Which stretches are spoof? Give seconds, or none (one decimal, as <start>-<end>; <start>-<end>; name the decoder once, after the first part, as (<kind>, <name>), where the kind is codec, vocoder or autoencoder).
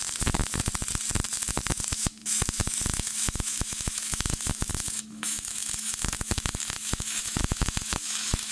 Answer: 0.0-0.7 (autoencoder, DAC-VAE); 1.3-8.5